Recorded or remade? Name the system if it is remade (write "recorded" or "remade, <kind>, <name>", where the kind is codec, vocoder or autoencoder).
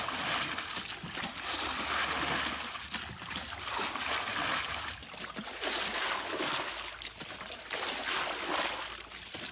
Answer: recorded